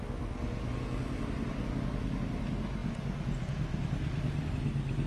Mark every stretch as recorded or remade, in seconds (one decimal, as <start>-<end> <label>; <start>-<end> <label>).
0.0-5.1 recorded